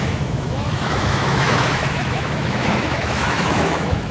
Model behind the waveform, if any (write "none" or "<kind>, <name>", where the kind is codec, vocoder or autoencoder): autoencoder, DAC-VAE